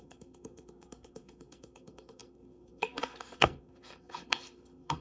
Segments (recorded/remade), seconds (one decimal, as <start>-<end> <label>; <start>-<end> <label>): 0.0-5.0 remade